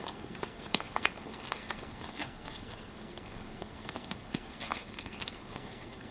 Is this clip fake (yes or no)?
yes